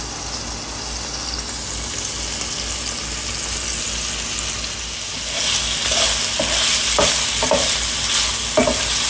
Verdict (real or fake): real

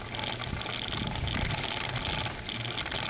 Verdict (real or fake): real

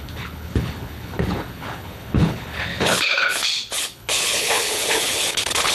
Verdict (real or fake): fake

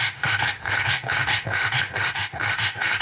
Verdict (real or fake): fake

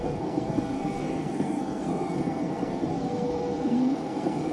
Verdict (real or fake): fake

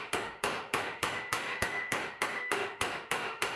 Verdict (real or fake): fake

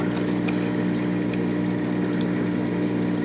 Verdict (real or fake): real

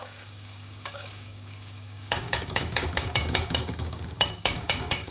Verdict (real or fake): fake